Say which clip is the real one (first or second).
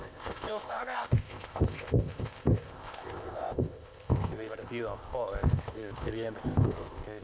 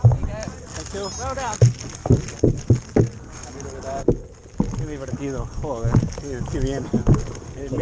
second